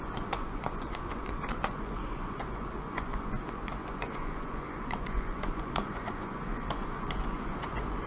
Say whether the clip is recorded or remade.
remade